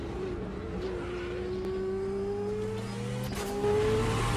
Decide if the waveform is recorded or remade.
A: recorded